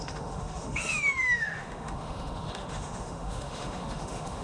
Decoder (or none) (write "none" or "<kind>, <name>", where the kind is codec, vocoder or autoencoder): autoencoder, DAC-VAE